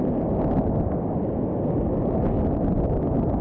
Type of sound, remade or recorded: recorded